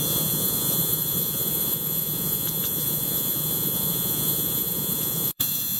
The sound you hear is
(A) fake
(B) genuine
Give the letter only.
A